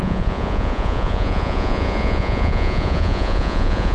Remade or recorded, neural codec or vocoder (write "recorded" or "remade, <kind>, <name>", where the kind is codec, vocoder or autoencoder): remade, vocoder, Vocos